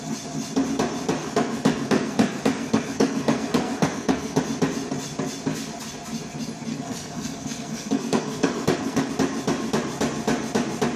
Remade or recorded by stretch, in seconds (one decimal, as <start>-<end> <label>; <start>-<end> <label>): 0.0-1.2 recorded; 1.2-4.4 remade; 4.4-6.7 recorded; 6.7-9.1 remade; 9.1-11.0 recorded

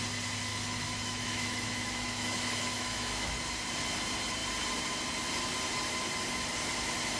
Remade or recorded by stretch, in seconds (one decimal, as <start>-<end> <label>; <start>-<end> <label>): 0.0-0.5 recorded; 0.5-3.3 remade; 3.3-7.2 recorded

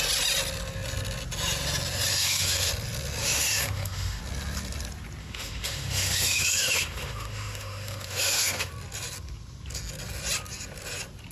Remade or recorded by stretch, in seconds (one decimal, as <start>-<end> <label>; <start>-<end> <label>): 0.0-2.1 recorded; 2.1-2.7 remade; 2.7-3.2 recorded; 3.2-4.2 remade; 4.2-5.2 recorded; 5.2-8.7 remade; 8.7-11.3 recorded